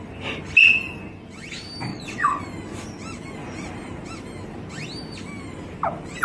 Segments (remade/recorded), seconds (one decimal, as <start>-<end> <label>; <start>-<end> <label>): 0.0-1.9 recorded; 1.9-2.4 remade; 2.4-6.2 recorded